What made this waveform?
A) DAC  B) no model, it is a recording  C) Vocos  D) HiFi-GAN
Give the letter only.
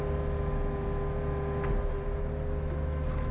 B